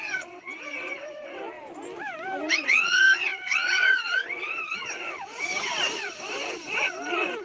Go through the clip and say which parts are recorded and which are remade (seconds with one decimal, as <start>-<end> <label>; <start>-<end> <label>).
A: 0.0-1.4 remade; 1.4-2.5 recorded; 2.5-7.4 remade